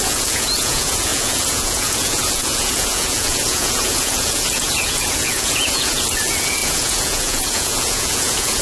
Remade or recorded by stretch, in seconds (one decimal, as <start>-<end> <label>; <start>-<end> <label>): 0.0-8.6 remade